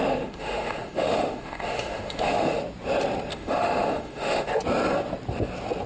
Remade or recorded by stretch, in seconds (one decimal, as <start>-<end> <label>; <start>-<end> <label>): 0.0-2.6 remade; 2.6-3.3 recorded; 3.3-4.6 remade; 4.6-5.9 recorded